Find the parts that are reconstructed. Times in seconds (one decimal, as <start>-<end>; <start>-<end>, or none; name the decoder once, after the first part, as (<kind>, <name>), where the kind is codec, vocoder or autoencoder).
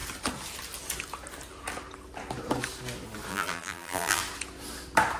3.3-4.2 (vocoder, BigVGAN v2)